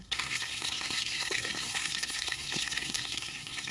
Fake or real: fake